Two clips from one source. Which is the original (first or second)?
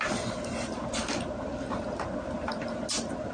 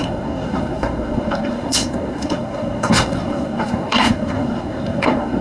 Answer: first